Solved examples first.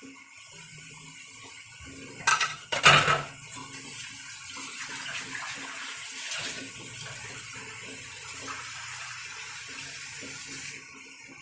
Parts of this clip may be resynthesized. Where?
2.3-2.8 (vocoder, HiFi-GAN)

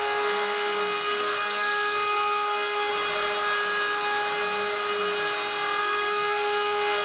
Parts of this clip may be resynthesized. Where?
0.0-2.9 (codec, SNAC); 5.8-7.0

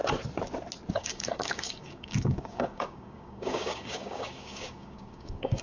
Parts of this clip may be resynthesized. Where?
0.9-5.6 (codec, DAC)

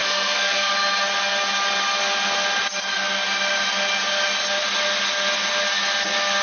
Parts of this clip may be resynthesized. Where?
0.0-0.7 (codec, SNAC)

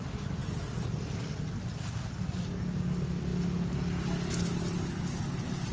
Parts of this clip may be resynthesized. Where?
none

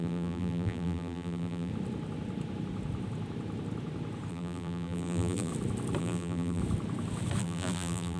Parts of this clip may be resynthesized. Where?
0.0-1.7 (vocoder, BigVGAN v2); 4.3-5.5; 6.0-6.6; 7.4-8.2